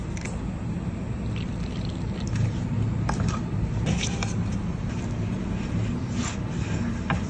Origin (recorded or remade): recorded